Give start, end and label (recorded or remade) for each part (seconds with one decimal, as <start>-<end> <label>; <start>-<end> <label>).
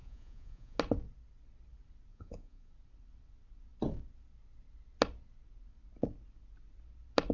0.0-0.8 remade; 0.8-2.1 recorded; 2.1-2.7 remade; 2.7-7.3 recorded